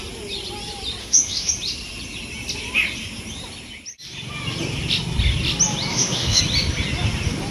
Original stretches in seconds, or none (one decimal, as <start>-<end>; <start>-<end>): 0.0-1.0; 1.5-5.9; 6.4-7.5